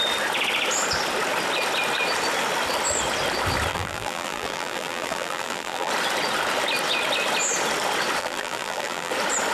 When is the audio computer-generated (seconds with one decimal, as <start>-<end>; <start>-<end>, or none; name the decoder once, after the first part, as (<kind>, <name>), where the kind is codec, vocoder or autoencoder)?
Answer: 3.7-5.9 (vocoder, BigVGAN v2); 8.2-9.1